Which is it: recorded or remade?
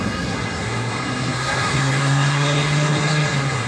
remade